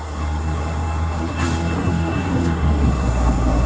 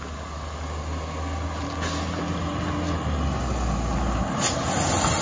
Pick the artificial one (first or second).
first